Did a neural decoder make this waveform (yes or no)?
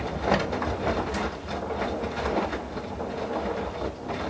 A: no